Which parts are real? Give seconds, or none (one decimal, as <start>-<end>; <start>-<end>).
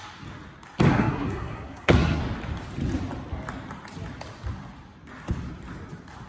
0.0-0.9; 2.2-6.3